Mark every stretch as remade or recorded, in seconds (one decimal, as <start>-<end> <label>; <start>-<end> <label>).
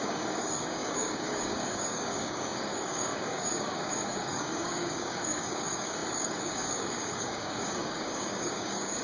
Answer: 0.0-9.0 remade